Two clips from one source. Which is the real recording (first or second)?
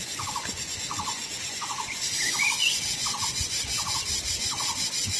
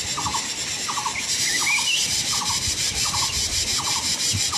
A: second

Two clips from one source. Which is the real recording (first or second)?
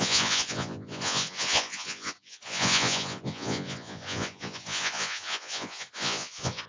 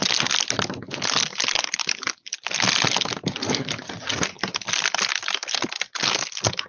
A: second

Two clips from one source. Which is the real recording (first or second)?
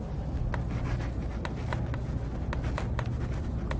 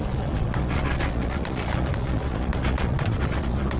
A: first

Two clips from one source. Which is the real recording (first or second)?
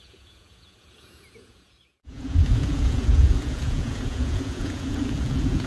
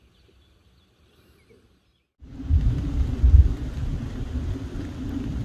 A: second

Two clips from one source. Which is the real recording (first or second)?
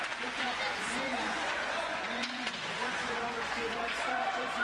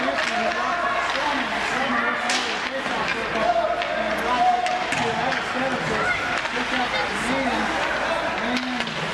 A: second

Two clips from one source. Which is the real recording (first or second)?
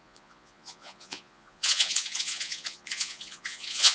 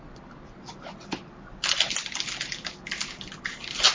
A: second